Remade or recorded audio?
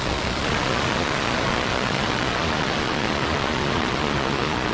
remade